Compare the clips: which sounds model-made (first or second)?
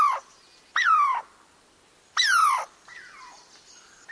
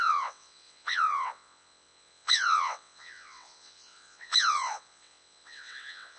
second